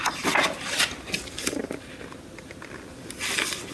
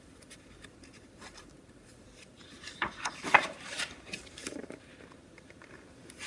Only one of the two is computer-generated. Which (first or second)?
second